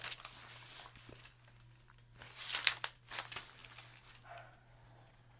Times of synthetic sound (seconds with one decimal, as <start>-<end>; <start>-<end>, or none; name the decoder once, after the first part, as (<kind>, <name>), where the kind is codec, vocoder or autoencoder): none